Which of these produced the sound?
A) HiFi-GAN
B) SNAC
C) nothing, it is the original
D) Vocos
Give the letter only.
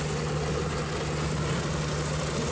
C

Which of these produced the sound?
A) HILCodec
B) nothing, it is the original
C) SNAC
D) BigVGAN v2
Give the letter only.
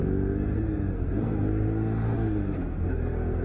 C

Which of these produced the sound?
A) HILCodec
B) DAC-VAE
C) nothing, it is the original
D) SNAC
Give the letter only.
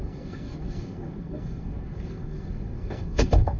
D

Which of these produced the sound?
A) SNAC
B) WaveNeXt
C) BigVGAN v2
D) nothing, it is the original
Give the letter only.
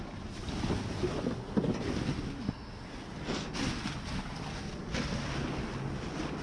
D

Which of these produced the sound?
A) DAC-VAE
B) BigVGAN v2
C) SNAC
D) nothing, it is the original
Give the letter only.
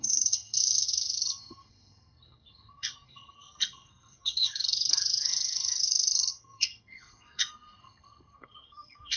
C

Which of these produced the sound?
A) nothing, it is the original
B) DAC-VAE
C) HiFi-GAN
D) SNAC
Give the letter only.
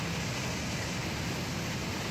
A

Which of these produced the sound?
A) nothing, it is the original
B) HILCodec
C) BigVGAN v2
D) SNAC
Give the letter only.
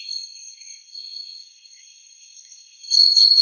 D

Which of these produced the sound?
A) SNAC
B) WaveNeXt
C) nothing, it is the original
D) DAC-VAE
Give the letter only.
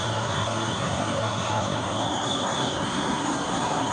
A